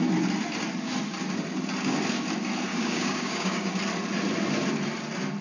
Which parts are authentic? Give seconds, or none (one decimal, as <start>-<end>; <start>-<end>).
0.0-2.7; 3.7-5.4